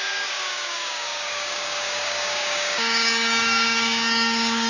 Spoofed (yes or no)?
yes